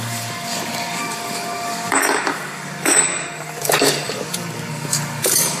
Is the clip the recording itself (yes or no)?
no